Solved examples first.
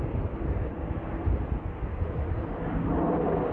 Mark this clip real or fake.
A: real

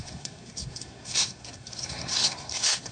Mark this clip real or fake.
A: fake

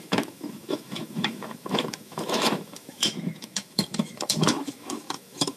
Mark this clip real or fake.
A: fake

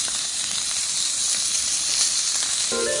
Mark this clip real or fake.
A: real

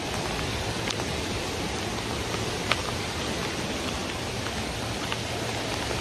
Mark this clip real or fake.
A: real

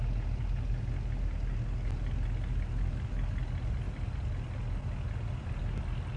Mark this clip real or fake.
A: real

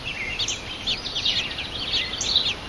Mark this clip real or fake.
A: real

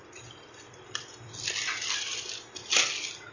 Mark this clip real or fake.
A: real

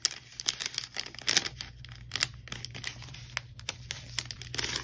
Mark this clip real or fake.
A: real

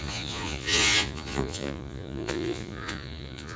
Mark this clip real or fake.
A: fake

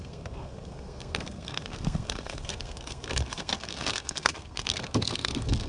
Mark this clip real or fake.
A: fake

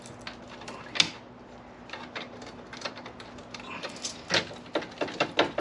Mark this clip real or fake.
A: real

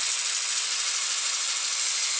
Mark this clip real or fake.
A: real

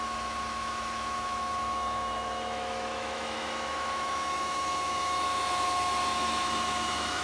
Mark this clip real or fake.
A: fake